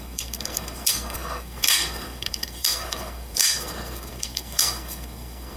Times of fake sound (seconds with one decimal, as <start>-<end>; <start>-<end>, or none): 0.0-5.6